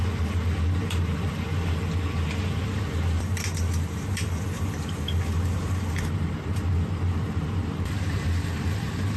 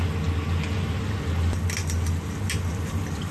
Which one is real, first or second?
second